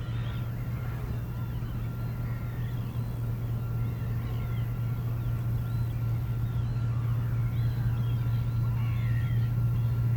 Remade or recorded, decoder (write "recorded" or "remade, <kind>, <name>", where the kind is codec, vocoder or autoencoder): recorded